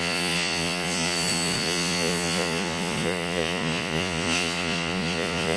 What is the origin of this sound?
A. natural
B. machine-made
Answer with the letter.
B